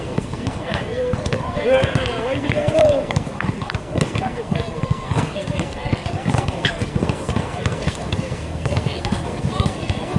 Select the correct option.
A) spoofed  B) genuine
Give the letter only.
A